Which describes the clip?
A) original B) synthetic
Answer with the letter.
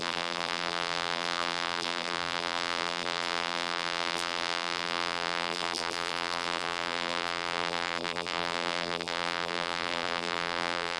B